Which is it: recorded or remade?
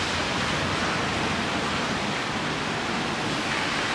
recorded